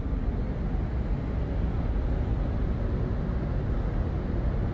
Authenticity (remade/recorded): recorded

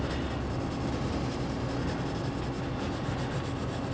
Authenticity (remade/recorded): recorded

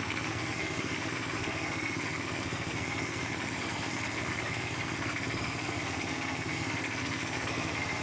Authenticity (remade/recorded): remade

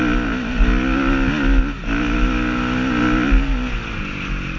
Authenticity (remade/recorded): recorded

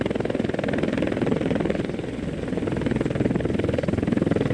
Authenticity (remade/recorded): recorded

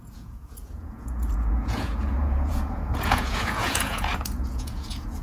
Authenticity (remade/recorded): remade